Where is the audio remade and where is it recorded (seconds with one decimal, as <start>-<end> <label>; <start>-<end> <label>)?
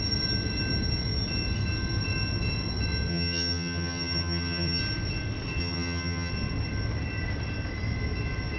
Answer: 0.0-3.1 recorded; 3.1-4.8 remade; 4.8-5.6 recorded; 5.6-6.3 remade; 6.3-8.6 recorded